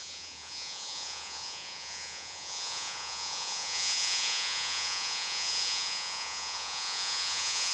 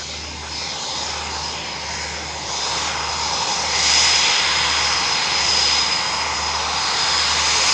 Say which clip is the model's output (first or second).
first